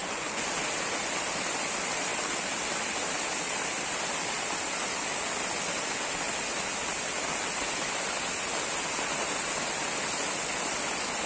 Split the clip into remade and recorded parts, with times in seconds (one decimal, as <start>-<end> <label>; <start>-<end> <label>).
0.0-0.5 remade; 0.5-11.3 recorded